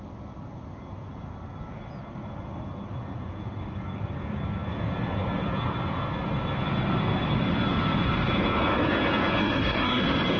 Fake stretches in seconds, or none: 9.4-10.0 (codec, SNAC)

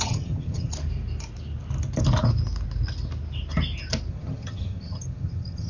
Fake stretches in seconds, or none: 0.0-0.7 (vocoder, HiFi-GAN); 4.1-5.7